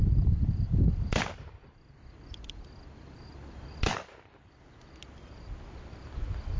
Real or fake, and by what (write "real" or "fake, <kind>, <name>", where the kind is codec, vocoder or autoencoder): real